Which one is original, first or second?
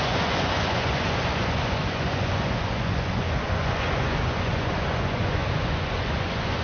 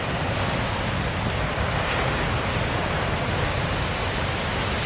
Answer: second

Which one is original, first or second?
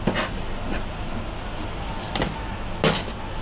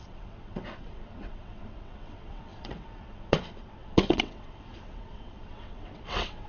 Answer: first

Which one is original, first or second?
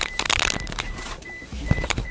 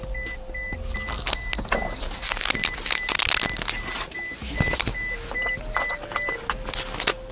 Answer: second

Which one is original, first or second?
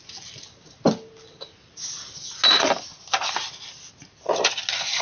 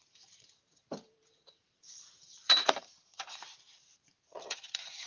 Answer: first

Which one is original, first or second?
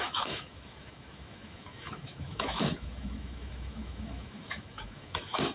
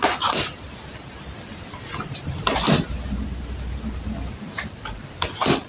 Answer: second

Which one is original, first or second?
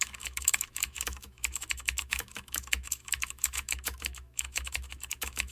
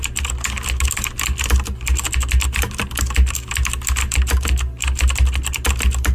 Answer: second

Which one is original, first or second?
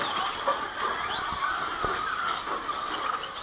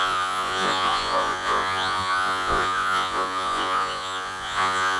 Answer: first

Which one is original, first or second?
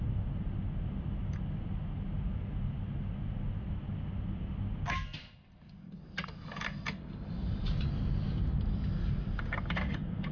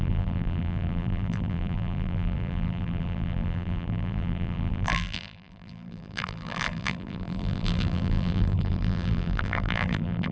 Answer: first